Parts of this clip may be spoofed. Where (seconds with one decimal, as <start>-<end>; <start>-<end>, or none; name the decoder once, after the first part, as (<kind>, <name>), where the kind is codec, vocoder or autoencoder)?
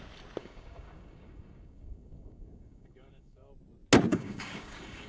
0.4-3.5 (codec, DAC); 4.1-5.1